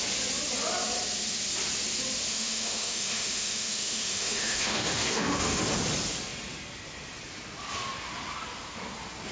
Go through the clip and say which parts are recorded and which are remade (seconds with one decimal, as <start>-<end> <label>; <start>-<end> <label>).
0.0-2.3 recorded; 2.3-5.6 remade; 5.6-9.3 recorded